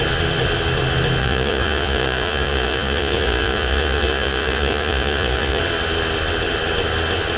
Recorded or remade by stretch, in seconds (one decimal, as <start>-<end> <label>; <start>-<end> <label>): 0.0-1.2 recorded; 1.2-5.6 remade; 5.6-7.4 recorded